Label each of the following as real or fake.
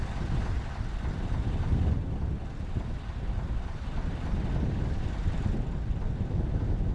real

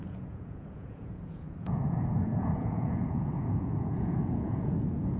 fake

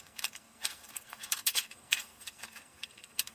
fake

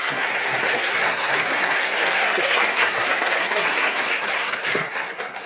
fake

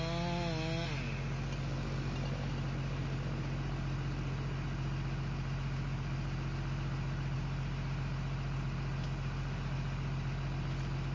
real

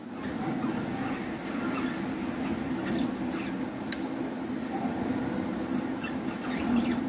real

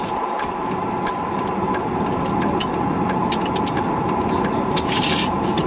real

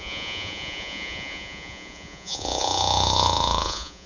fake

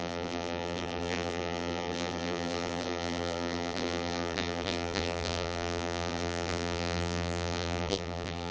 fake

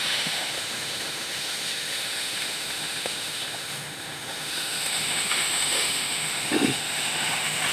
fake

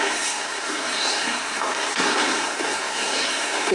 fake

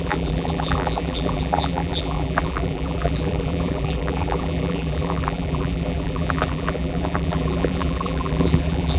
fake